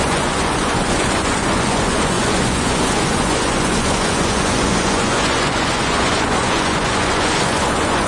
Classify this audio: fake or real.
fake